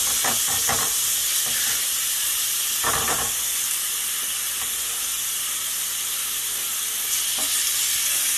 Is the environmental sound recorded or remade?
recorded